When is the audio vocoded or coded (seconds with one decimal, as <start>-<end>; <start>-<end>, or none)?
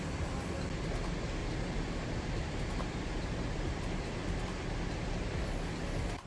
1.4-3.7